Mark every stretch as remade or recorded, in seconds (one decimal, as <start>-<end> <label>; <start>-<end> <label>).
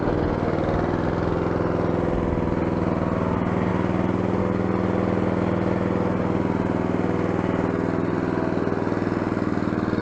0.0-10.0 recorded